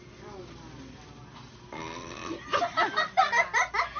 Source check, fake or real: real